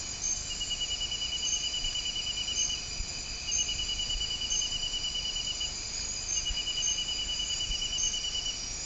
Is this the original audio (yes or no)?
yes